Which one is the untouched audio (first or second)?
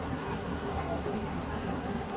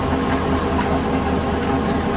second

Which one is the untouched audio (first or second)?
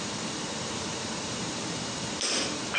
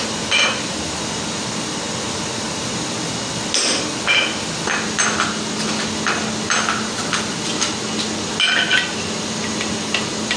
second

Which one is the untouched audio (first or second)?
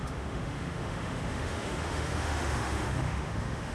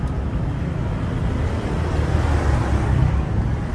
second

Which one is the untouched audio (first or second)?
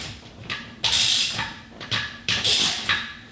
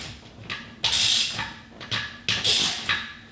second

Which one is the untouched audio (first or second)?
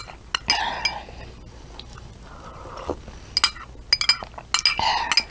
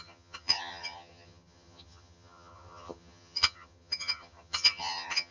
first